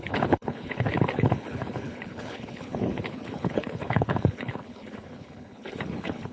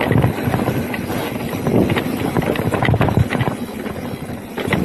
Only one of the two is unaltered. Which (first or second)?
second